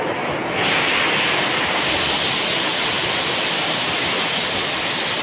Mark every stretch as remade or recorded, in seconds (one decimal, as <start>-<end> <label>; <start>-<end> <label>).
0.0-5.2 recorded